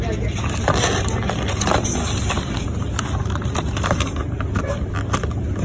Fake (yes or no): no